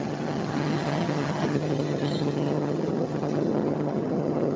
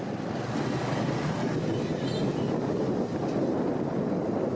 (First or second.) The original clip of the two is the second